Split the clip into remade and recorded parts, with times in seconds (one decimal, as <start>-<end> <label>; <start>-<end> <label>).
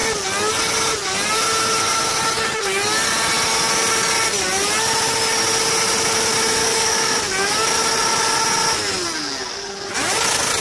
0.0-6.6 recorded; 6.6-7.2 remade; 7.2-10.6 recorded